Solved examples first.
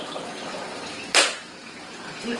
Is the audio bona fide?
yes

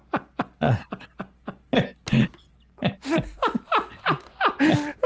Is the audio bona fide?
yes